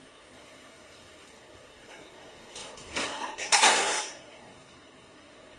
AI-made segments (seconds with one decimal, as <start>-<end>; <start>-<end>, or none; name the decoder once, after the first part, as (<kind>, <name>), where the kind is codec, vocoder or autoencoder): 0.0-5.6 (codec, SNAC)